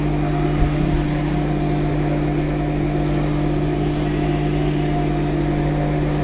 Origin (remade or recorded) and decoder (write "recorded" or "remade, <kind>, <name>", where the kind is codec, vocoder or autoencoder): recorded